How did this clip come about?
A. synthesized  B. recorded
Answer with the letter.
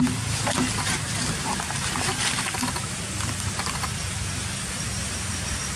B